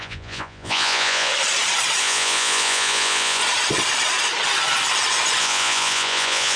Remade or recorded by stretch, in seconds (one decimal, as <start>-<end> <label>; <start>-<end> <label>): 0.0-1.3 remade; 1.3-2.0 recorded; 2.0-3.4 remade; 3.4-5.4 recorded; 5.4-6.6 remade